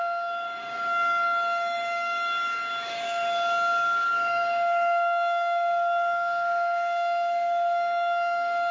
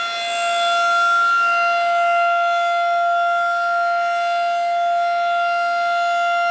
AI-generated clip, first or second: first